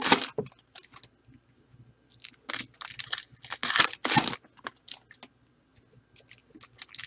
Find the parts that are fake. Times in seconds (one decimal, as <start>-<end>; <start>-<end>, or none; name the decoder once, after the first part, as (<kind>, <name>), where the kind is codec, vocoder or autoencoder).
none